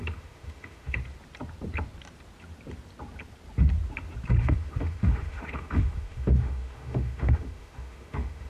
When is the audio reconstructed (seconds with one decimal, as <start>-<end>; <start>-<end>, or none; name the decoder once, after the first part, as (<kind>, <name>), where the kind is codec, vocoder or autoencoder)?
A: 0.0-1.0 (autoencoder, DAC-VAE); 4.4-8.5